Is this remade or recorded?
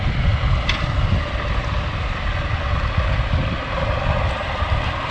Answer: recorded